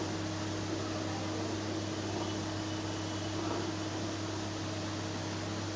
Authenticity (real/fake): real